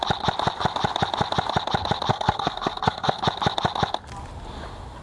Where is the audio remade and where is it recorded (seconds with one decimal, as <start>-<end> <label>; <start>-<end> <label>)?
0.0-2.1 recorded; 2.1-3.2 remade; 3.2-5.0 recorded